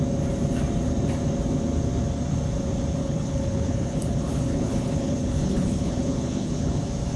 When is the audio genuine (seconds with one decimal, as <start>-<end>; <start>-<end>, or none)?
0.0-3.0; 6.8-7.2